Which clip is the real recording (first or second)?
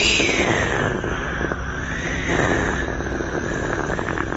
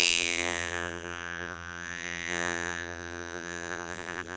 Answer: first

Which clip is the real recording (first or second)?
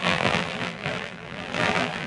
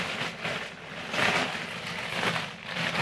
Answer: second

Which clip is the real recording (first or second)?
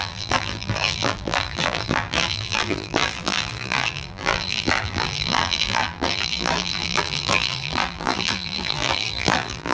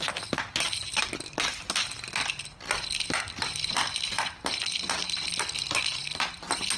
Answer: second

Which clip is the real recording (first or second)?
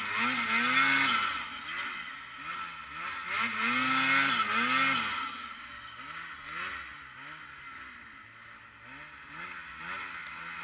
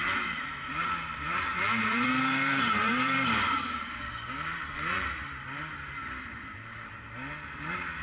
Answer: first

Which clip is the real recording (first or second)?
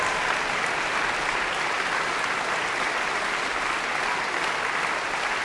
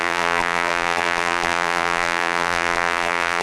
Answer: first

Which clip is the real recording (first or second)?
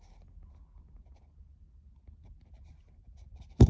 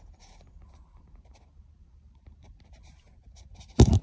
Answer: first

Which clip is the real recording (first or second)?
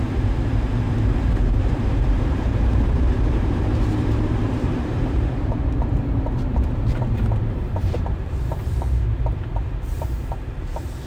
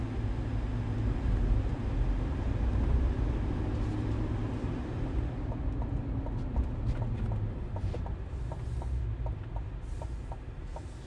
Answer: second